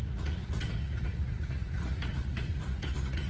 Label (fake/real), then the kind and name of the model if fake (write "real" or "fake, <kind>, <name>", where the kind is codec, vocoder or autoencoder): fake, vocoder, Vocos